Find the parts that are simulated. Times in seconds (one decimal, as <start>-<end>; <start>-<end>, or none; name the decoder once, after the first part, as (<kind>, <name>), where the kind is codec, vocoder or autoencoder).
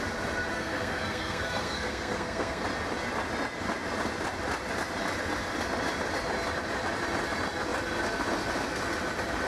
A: 0.5-2.6 (codec, SNAC)